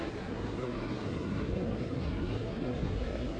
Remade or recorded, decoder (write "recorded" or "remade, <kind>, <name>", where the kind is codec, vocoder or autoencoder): remade, codec, SNAC